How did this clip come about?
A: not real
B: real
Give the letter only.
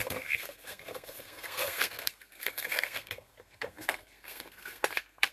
A